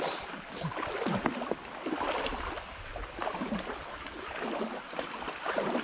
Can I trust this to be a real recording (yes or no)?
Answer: yes